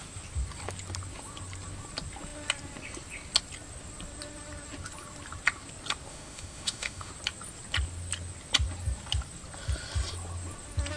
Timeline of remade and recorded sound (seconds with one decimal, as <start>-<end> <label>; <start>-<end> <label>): 0.0-6.1 recorded; 6.1-7.1 remade; 7.1-11.0 recorded